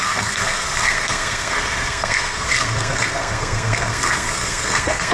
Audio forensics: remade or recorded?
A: remade